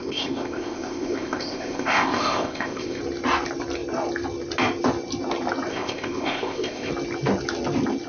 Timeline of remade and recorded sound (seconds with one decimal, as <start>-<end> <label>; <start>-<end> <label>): 0.0-3.0 remade; 3.0-5.7 recorded; 5.7-6.9 remade; 6.9-8.1 recorded

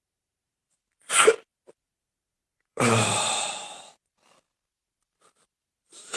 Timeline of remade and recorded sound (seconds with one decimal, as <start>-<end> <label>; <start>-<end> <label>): 0.0-6.2 remade

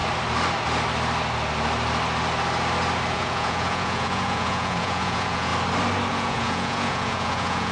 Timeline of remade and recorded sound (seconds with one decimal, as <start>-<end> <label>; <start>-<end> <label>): 0.0-3.1 recorded; 3.1-5.5 remade; 5.5-6.1 recorded; 6.1-7.7 remade

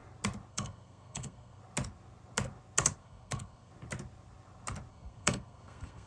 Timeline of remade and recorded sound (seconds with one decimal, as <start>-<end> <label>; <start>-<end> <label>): 0.0-0.5 recorded; 0.5-1.6 remade; 1.6-3.0 recorded; 3.0-3.7 remade; 3.7-4.9 recorded; 4.9-6.1 remade

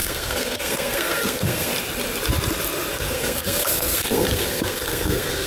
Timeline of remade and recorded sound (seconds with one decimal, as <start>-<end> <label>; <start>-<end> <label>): 0.0-1.7 remade; 1.7-2.9 recorded; 2.9-5.5 remade

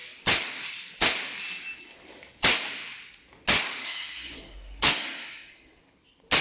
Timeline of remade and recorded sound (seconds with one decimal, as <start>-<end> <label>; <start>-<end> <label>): 0.0-3.8 recorded; 3.8-5.8 remade; 5.8-6.4 recorded